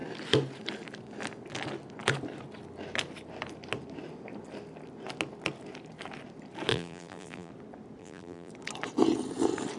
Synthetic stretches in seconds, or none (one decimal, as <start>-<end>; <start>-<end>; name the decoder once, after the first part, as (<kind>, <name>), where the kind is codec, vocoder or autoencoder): 6.7-7.5 (vocoder, BigVGAN v2); 8.0-8.5